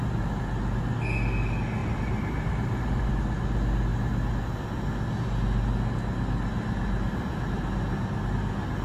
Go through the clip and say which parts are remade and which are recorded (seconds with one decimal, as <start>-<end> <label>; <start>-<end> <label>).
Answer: 0.0-1.8 recorded; 1.8-3.1 remade; 3.1-8.8 recorded